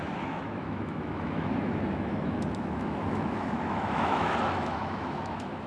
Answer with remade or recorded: remade